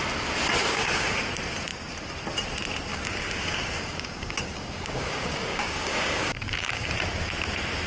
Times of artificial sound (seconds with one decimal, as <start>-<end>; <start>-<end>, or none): 0.6-1.2; 2.9-6.9